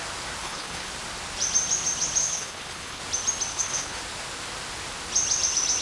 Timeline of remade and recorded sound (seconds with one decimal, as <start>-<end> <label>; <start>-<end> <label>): 0.0-0.4 recorded; 0.4-0.9 remade; 0.9-2.2 recorded; 2.2-3.0 remade; 3.0-3.5 recorded; 3.5-4.0 remade; 4.0-5.8 recorded